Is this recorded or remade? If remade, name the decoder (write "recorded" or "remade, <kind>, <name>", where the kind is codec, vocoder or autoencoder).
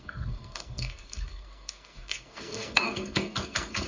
remade, codec, SNAC